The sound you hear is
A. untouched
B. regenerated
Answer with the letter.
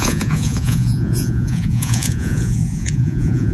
B